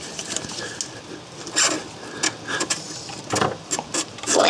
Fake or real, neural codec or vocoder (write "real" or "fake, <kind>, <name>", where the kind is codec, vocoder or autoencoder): real